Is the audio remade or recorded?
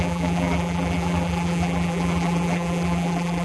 remade